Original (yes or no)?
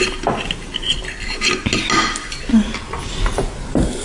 yes